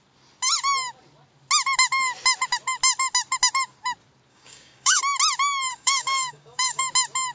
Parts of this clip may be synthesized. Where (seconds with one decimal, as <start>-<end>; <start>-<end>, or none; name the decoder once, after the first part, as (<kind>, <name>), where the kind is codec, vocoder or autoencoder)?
4.3-5.0 (codec, DAC); 5.7-6.8